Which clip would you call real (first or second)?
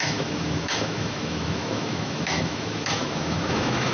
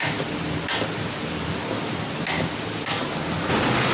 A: second